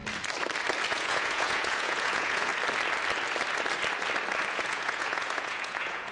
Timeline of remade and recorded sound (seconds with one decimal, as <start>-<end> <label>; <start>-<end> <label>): 0.0-0.9 recorded; 0.9-2.5 remade; 2.5-4.5 recorded; 4.5-6.1 remade